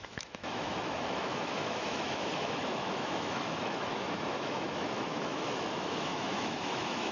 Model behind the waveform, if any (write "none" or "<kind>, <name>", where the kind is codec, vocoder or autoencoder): autoencoder, DAC-VAE